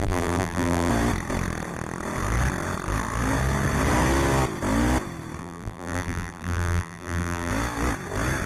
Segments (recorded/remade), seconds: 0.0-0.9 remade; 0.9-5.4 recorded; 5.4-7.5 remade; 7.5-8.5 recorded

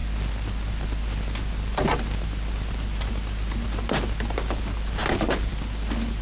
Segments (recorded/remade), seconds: 0.0-6.2 recorded

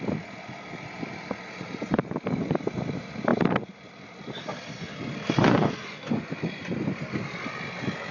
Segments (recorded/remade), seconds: 0.0-5.4 recorded; 5.4-6.3 remade; 6.3-8.1 recorded

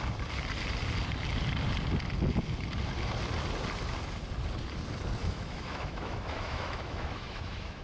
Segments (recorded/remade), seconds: 0.0-5.2 recorded; 5.2-7.8 remade

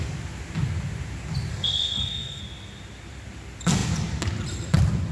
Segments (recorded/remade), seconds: 0.0-1.5 recorded; 1.5-2.4 remade; 2.4-5.1 recorded

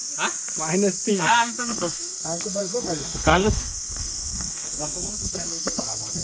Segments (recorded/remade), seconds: 0.0-1.1 recorded; 1.1-6.2 remade